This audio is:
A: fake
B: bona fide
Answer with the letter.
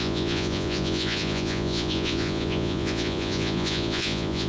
A